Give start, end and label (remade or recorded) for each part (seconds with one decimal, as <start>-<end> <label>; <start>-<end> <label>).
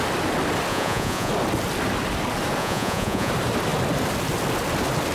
0.0-0.7 recorded; 0.7-1.3 remade; 1.3-2.6 recorded; 2.6-3.3 remade; 3.3-5.1 recorded